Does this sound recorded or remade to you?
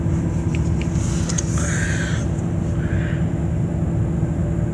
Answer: recorded